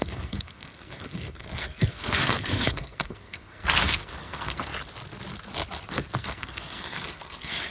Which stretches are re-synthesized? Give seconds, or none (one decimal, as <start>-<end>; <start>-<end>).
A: 0.0-4.7; 5.9-7.7